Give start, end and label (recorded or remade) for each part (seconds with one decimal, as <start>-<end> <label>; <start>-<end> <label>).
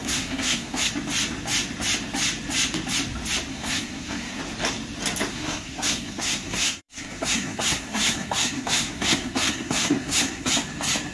0.0-0.9 remade; 0.9-3.5 recorded; 3.5-4.4 remade; 4.4-5.3 recorded; 5.3-10.5 remade; 10.5-11.1 recorded